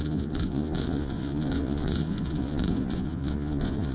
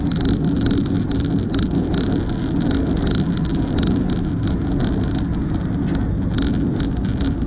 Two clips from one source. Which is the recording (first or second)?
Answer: second